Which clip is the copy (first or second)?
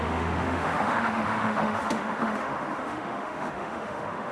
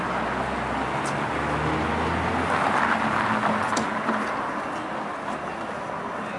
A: first